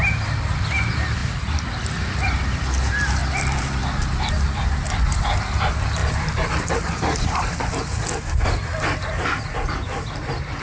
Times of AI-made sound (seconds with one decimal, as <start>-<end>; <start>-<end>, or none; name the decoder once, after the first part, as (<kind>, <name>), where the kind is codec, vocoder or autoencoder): 3.2-3.8 (vocoder, BigVGAN v2)